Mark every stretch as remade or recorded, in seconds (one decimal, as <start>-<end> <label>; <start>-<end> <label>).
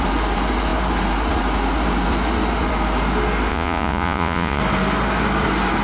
0.0-3.5 recorded; 3.5-4.6 remade; 4.6-5.8 recorded